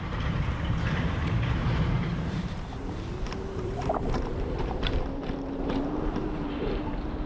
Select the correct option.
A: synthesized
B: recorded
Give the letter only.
A